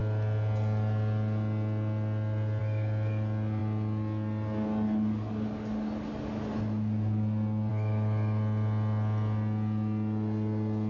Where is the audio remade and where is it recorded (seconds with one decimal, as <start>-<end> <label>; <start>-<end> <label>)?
0.0-10.9 recorded